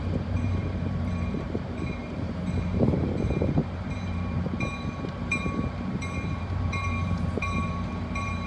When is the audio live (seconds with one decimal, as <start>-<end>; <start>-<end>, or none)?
none